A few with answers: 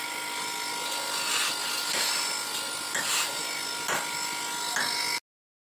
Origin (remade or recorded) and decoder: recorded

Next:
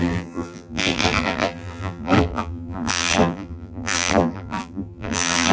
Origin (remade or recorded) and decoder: remade, vocoder, BigVGAN v2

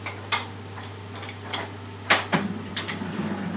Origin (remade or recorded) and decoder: remade, vocoder, BigVGAN v2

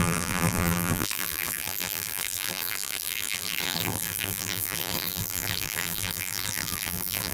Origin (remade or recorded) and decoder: remade, vocoder, BigVGAN v2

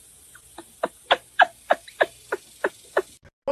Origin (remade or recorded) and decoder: recorded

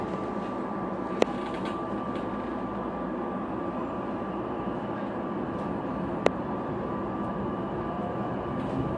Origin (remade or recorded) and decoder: recorded